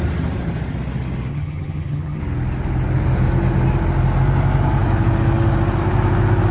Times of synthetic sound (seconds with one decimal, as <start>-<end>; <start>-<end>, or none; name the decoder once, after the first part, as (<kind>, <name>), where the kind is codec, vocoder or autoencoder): 1.3-2.2 (vocoder, HiFi-GAN)